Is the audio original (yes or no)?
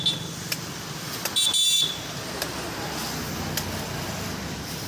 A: yes